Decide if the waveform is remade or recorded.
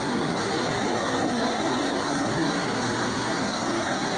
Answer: remade